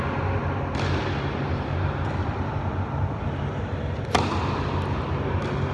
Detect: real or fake real